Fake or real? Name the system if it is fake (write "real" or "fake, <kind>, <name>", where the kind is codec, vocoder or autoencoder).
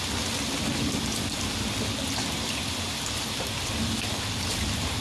real